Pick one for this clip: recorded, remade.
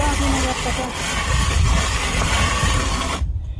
recorded